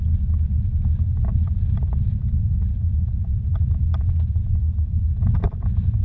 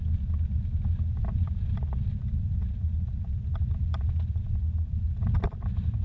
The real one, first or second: second